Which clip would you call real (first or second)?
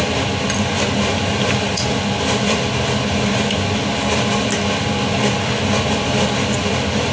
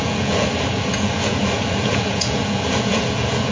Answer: first